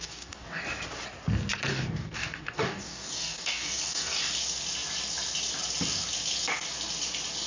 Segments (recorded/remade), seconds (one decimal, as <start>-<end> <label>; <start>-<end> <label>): 0.0-0.6 remade; 0.6-1.7 recorded; 1.7-4.3 remade; 4.3-7.5 recorded